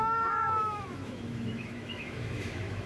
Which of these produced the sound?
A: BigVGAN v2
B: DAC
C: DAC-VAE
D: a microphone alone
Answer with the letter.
C